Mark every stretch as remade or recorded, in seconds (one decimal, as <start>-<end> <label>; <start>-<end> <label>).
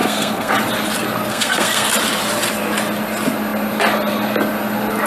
0.0-0.5 remade; 0.5-1.3 recorded; 1.3-1.9 remade; 1.9-5.1 recorded